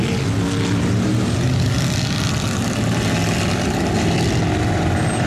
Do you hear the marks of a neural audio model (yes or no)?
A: no